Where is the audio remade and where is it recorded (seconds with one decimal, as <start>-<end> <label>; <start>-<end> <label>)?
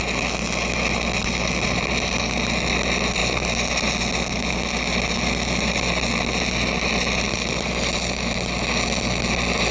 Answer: 0.0-9.7 recorded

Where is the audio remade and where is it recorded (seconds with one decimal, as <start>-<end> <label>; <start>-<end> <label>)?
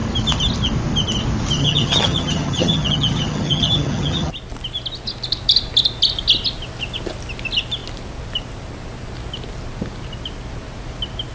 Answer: 0.0-1.6 recorded; 1.6-4.3 remade; 4.3-11.3 recorded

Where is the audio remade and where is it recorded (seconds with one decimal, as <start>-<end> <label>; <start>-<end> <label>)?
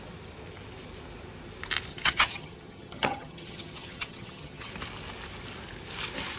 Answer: 0.0-1.9 recorded; 1.9-4.7 remade; 4.7-6.4 recorded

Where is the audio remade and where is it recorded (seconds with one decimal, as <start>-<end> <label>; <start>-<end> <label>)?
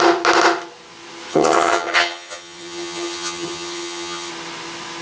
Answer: 0.0-1.3 recorded; 1.3-4.3 remade; 4.3-5.0 recorded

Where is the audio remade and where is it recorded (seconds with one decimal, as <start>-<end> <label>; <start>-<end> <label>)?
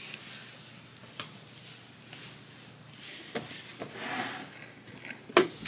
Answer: 0.0-5.7 recorded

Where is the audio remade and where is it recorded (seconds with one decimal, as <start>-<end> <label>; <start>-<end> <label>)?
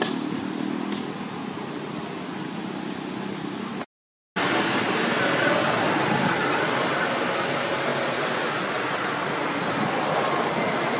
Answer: 0.0-11.0 recorded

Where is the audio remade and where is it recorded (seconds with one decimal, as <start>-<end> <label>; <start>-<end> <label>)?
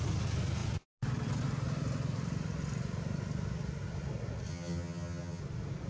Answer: 0.0-4.5 recorded; 4.5-5.4 remade; 5.4-5.9 recorded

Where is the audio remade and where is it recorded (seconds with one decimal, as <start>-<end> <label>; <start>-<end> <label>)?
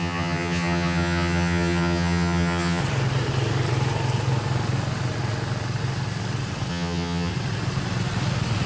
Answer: 0.0-2.8 remade; 2.8-6.7 recorded; 6.7-7.3 remade; 7.3-8.7 recorded